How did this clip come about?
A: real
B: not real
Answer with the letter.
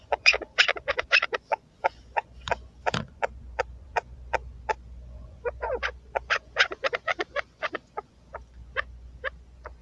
B